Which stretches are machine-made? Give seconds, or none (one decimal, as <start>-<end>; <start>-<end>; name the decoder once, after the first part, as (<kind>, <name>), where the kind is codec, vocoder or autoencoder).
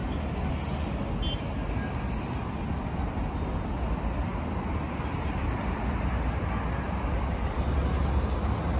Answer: none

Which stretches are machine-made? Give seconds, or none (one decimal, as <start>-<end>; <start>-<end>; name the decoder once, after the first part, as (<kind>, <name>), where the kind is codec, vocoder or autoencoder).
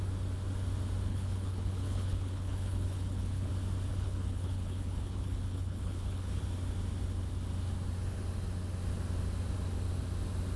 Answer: 1.1-3.5 (codec, HILCodec); 3.9-6.4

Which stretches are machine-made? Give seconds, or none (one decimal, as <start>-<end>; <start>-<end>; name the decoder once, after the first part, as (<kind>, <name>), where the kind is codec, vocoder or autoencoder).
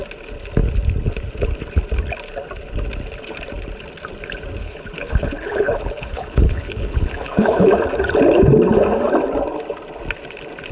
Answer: 4.6-7.7 (codec, HILCodec)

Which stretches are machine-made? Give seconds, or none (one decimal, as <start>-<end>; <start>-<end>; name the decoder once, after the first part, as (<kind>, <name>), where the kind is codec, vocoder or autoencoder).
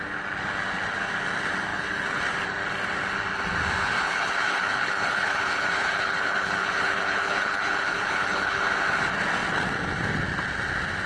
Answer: 1.7-2.2 (codec, HILCodec); 3.8-8.6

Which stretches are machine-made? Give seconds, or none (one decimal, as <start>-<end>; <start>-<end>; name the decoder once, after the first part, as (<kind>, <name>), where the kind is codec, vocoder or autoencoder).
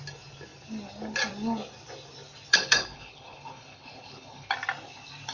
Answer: 2.5-4.5 (codec, HILCodec)